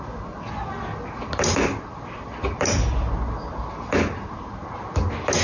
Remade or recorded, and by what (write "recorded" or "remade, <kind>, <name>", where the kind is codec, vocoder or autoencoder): recorded